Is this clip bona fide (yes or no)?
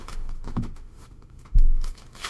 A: no